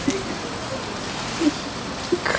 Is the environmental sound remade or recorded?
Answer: recorded